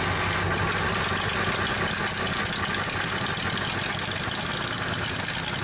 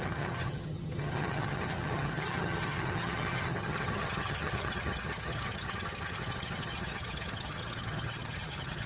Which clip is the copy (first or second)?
second